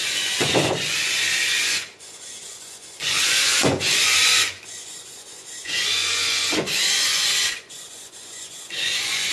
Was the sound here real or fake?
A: fake